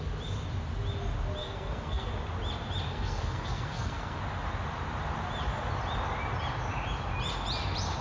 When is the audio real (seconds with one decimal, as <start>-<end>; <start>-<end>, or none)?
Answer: 0.0-1.4; 2.1-2.9; 4.2-8.0